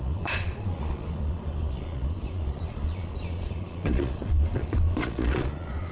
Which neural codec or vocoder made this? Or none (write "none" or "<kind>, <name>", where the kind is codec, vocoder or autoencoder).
vocoder, Vocos